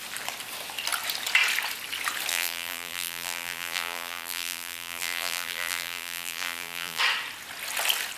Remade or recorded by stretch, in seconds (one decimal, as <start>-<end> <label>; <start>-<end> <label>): 0.0-2.3 recorded; 2.3-7.0 remade; 7.0-8.2 recorded